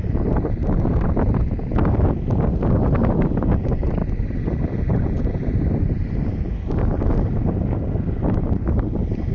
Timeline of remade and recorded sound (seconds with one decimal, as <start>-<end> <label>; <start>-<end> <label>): 0.0-4.0 remade; 4.0-5.0 recorded; 5.0-9.3 remade